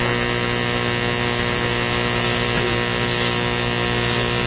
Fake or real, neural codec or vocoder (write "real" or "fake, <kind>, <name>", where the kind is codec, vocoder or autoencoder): real